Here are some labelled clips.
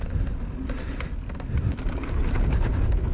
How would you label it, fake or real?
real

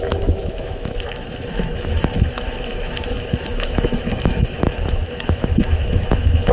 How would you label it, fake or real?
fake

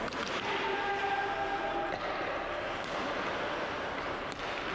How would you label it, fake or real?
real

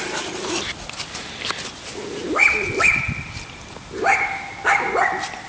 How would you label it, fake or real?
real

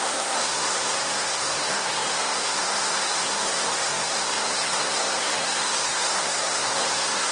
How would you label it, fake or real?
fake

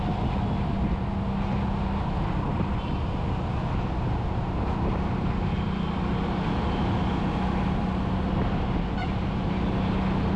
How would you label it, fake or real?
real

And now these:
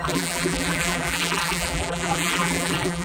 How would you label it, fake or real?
fake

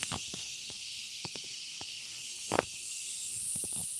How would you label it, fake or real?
fake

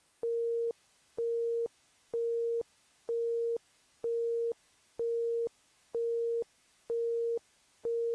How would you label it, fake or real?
fake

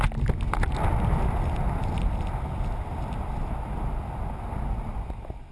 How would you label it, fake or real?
real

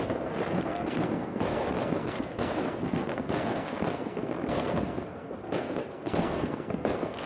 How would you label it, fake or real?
fake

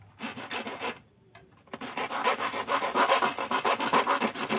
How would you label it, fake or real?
real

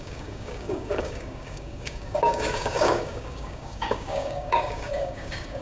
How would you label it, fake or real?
fake